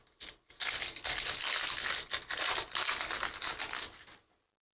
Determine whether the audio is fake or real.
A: real